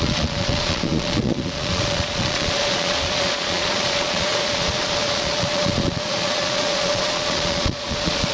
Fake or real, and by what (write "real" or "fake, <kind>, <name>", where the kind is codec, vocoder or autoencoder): fake, vocoder, Vocos